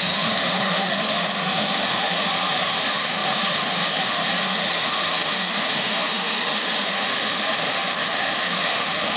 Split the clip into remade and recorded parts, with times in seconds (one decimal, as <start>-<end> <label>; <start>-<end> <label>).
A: 0.0-9.2 remade

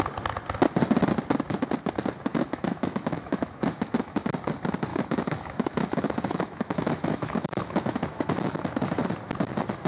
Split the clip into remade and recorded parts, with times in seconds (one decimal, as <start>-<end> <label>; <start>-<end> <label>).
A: 0.0-2.3 recorded; 2.3-4.2 remade; 4.2-4.9 recorded; 4.9-9.0 remade; 9.0-9.9 recorded

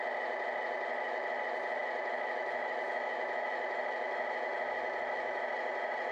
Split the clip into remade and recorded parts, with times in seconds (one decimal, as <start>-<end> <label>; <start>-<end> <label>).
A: 0.0-0.9 recorded; 0.9-1.4 remade; 1.4-1.8 recorded; 1.8-5.5 remade; 5.5-6.1 recorded

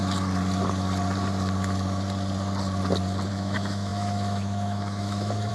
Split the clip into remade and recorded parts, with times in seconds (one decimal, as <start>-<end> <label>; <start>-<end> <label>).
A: 0.0-3.3 recorded; 3.3-5.5 remade

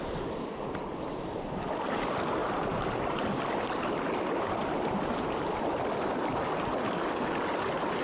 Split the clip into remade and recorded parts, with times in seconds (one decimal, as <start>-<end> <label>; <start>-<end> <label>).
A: 0.0-8.0 recorded

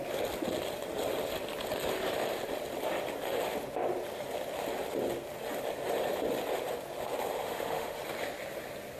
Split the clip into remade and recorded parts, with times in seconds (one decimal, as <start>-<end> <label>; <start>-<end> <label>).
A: 0.0-7.4 recorded; 7.4-8.0 remade; 8.0-9.0 recorded

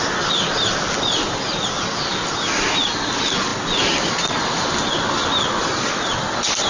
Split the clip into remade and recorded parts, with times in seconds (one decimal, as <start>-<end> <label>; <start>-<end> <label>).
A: 0.0-6.7 recorded